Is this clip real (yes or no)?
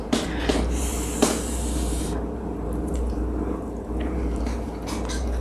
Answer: no